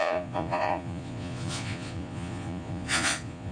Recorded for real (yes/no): no